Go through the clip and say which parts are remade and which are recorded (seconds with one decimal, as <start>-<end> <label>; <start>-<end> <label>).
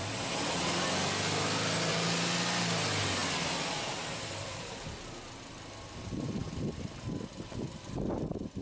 0.0-8.6 recorded